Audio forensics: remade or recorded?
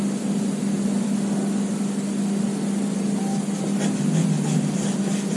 recorded